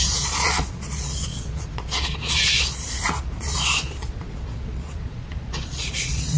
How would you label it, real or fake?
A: fake